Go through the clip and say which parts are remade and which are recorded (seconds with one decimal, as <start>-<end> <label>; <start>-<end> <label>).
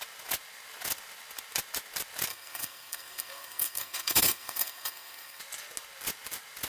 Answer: 0.0-2.3 recorded; 2.3-5.4 remade; 5.4-6.7 recorded